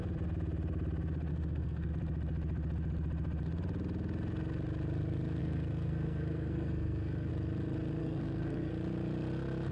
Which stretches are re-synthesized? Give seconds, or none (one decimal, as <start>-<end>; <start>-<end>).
1.3-1.9; 5.4-7.3; 8.0-8.7